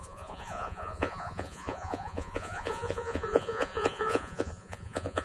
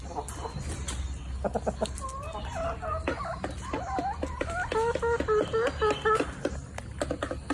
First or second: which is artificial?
first